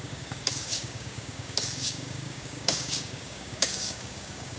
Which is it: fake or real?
fake